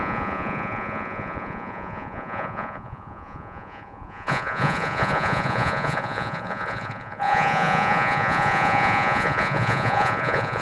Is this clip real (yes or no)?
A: no